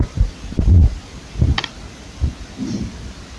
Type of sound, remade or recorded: recorded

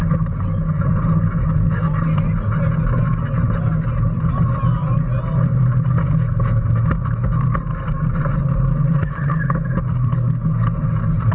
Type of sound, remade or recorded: recorded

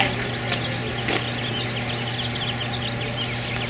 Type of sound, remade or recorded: recorded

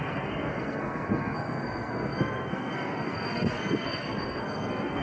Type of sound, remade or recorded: remade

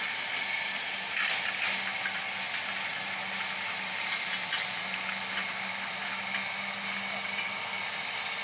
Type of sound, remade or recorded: recorded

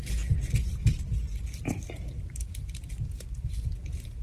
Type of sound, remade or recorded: recorded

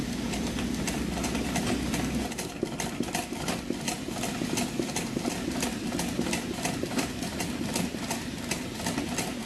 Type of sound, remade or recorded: recorded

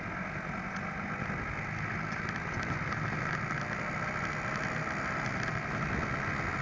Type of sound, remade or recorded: recorded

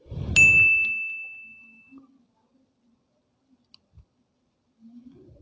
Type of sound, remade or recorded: recorded